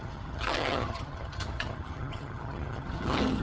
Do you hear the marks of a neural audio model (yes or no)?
yes